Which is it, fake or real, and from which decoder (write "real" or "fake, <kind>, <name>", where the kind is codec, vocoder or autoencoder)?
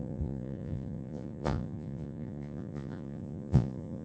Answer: fake, vocoder, Vocos